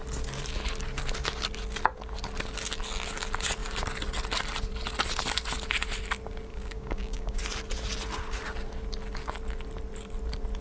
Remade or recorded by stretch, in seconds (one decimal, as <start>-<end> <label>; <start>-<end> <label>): 0.0-6.5 recorded; 6.5-7.4 remade; 7.4-10.6 recorded